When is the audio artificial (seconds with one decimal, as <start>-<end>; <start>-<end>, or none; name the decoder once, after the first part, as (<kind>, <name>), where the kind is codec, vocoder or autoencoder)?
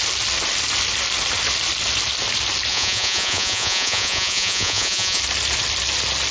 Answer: 2.7-5.2 (vocoder, Vocos)